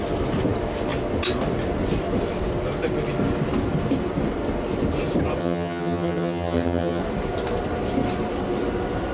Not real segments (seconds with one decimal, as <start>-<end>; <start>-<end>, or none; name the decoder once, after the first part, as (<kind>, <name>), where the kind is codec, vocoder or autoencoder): 5.4-7.0 (vocoder, HiFi-GAN)